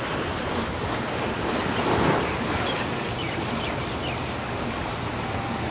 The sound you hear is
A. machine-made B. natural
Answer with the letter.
B